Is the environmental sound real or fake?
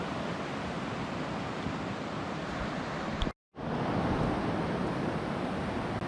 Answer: real